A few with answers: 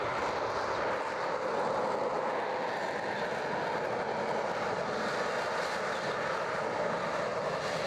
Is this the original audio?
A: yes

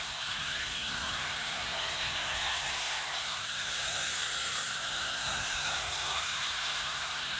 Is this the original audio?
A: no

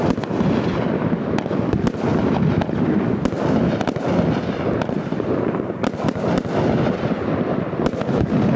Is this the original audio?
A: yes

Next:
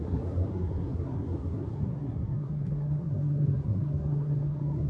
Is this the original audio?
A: no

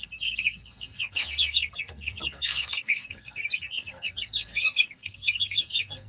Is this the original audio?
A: no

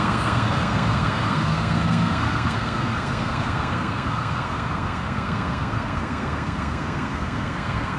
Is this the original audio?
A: no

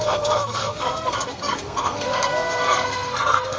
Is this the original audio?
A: no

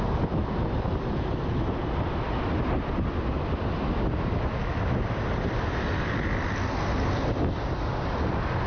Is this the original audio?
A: yes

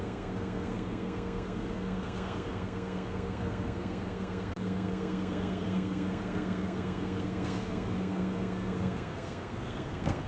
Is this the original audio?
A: no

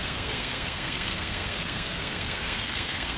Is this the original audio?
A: no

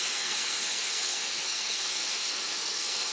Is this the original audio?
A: no